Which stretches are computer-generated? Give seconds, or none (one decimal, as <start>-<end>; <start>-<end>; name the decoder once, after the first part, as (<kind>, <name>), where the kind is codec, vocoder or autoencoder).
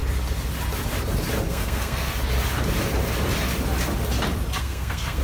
1.5-2.1 (codec, SNAC); 4.6-5.2